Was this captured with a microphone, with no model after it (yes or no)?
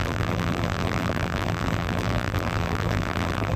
no